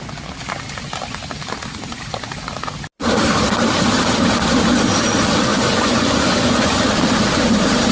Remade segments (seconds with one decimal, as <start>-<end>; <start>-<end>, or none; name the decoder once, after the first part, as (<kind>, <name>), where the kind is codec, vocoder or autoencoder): 5.5-6.8 (vocoder, Vocos)